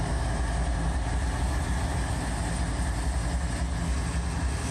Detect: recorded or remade recorded